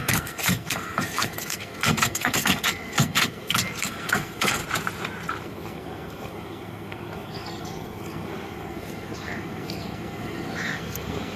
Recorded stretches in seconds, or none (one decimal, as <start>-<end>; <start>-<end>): 4.6-5.4